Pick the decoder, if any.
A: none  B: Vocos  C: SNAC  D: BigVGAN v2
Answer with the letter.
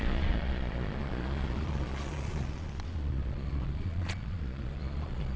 B